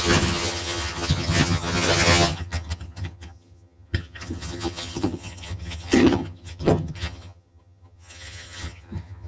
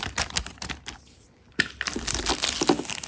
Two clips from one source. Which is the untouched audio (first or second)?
second